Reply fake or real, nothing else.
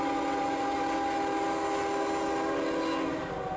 real